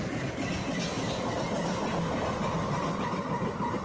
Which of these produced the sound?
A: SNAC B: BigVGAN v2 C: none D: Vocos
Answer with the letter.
C